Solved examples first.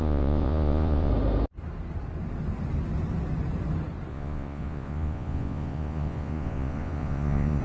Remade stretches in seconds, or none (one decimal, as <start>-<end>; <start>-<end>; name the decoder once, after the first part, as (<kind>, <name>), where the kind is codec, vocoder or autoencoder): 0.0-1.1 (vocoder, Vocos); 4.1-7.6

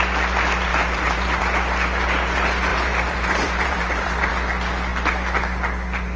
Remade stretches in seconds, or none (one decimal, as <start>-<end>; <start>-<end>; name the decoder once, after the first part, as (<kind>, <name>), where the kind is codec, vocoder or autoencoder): 0.7-1.4 (vocoder, BigVGAN v2); 2.7-4.3

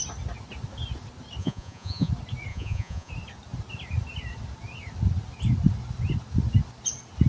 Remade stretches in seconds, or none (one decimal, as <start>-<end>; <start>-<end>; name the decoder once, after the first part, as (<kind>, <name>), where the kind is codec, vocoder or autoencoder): 1.4-2.1 (vocoder, Vocos); 2.5-3.1